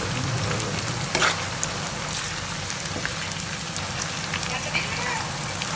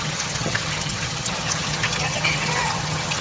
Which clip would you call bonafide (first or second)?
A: first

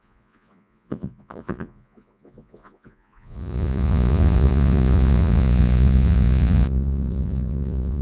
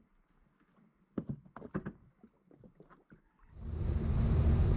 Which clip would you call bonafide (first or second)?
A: second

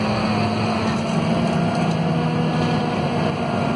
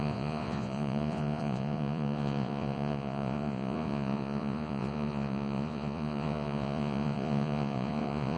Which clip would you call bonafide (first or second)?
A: first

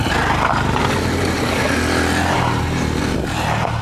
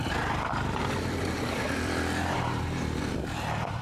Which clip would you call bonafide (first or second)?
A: first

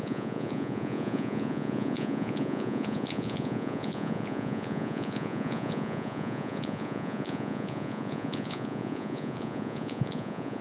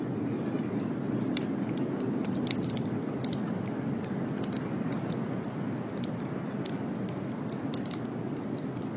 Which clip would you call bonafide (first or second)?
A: second